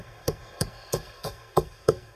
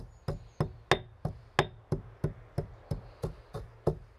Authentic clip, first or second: second